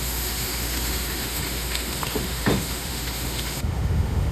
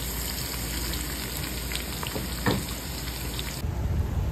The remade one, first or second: first